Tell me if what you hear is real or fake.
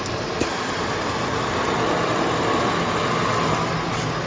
real